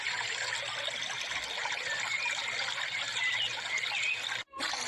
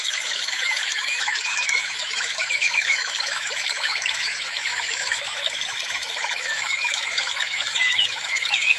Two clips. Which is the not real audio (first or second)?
second